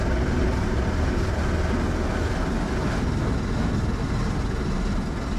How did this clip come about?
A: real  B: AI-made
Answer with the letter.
A